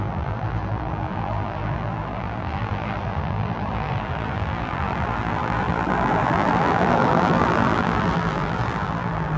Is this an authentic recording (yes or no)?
no